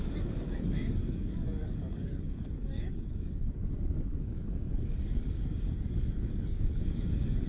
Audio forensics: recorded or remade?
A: remade